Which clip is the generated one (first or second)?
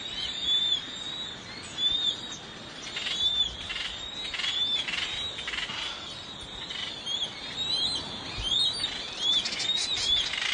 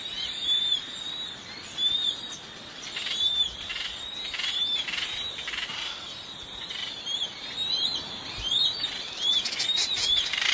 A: second